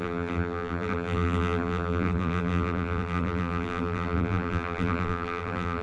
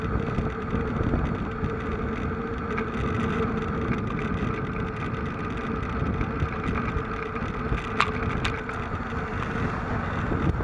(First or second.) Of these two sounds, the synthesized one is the first